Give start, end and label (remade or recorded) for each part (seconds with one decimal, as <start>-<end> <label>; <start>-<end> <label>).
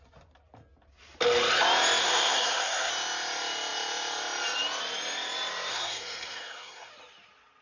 0.0-2.0 recorded; 2.0-2.9 remade; 2.9-5.7 recorded; 5.7-6.9 remade; 6.9-7.6 recorded